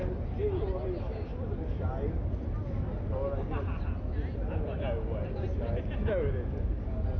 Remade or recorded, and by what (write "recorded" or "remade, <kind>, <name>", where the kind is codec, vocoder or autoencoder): recorded